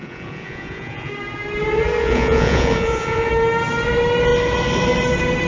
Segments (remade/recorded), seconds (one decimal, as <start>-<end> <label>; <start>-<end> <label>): 0.0-1.1 remade; 1.1-2.0 recorded; 2.0-3.3 remade; 3.3-5.5 recorded

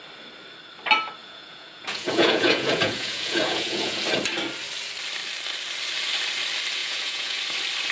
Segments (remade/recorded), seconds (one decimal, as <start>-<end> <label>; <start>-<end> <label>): 0.0-1.2 recorded; 1.2-4.0 remade; 4.0-6.8 recorded; 6.8-7.4 remade; 7.4-7.9 recorded